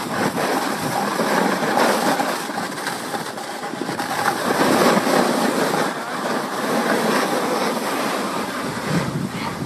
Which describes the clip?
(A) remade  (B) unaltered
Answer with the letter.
B